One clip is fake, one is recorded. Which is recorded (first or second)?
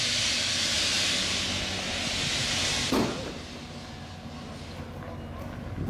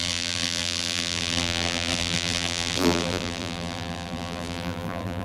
first